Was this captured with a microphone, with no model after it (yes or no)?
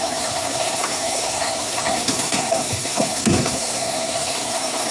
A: no